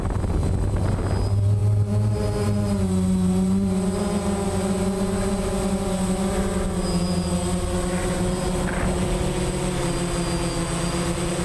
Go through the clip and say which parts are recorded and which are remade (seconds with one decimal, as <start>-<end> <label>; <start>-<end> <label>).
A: 0.0-11.4 recorded